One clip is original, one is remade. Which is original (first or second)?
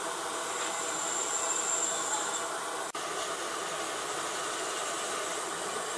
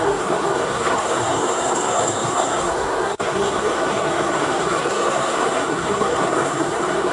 first